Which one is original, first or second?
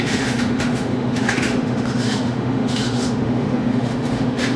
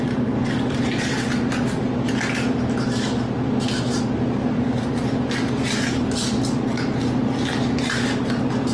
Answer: second